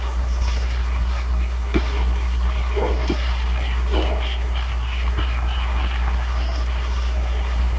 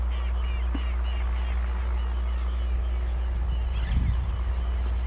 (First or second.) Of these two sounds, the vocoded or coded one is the first